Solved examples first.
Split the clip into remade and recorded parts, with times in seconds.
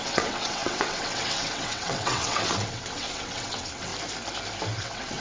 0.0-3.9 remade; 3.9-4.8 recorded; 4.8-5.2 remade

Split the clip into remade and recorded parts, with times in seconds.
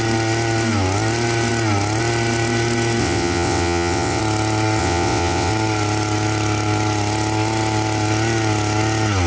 0.0-3.0 recorded; 3.0-4.2 remade; 4.2-4.8 recorded; 4.8-5.5 remade; 5.5-9.3 recorded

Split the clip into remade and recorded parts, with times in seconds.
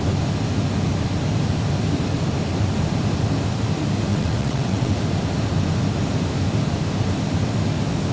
0.0-4.1 recorded; 4.1-4.9 remade; 4.9-8.1 recorded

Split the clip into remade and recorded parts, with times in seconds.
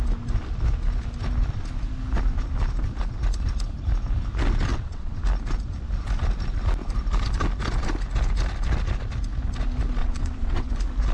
0.0-4.7 recorded; 4.7-5.2 remade; 5.2-10.0 recorded; 10.0-10.7 remade; 10.7-11.1 recorded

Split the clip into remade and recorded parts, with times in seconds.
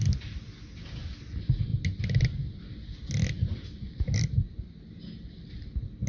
0.0-6.1 recorded